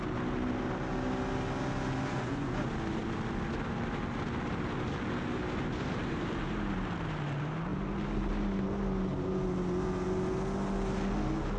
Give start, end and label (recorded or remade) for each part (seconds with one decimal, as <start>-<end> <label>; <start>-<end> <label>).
0.0-2.1 recorded; 2.1-2.6 remade; 2.6-11.6 recorded